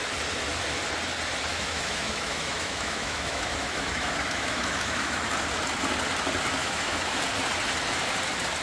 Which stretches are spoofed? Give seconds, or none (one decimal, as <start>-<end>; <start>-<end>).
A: 1.5-5.2; 6.6-7.2